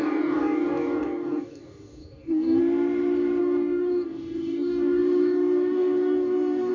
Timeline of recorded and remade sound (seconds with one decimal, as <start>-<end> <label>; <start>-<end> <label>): 0.0-2.6 remade; 2.6-3.4 recorded; 3.4-6.7 remade

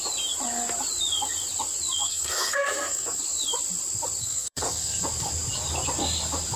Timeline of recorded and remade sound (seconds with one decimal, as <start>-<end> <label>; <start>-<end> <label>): 0.0-2.0 recorded; 2.0-3.2 remade; 3.2-4.2 recorded; 4.2-5.0 remade; 5.0-6.6 recorded

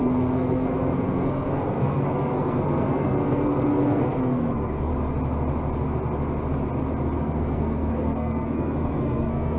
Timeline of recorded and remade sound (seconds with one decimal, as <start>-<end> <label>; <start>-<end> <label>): 0.0-4.9 remade; 4.9-7.2 recorded; 7.2-9.6 remade

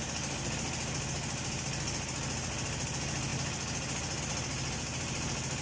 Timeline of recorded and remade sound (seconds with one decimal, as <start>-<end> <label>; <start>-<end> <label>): 0.0-5.6 recorded

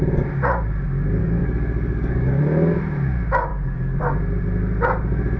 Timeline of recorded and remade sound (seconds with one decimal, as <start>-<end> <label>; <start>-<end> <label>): 0.0-1.2 recorded; 1.2-2.4 remade; 2.4-3.5 recorded; 3.5-4.0 remade; 4.0-5.4 recorded

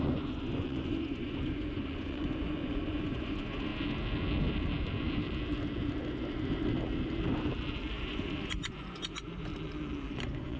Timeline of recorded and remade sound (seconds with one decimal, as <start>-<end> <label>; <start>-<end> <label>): 0.0-3.7 remade; 3.7-7.9 recorded; 7.9-9.5 remade; 9.5-10.1 recorded; 10.1-10.6 remade

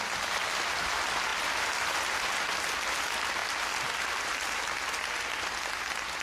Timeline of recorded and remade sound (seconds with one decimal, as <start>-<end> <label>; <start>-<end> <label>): 0.0-3.4 recorded; 3.4-4.4 remade; 4.4-6.2 recorded

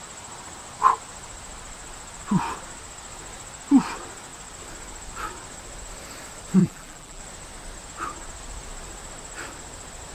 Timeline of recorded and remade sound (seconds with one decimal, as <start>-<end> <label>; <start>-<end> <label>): 0.0-6.6 recorded; 6.6-7.2 remade; 7.2-10.1 recorded